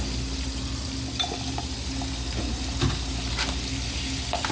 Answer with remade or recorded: recorded